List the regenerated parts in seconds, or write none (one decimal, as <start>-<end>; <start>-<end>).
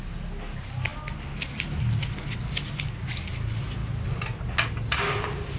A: none